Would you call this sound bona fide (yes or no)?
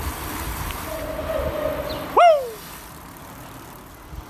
yes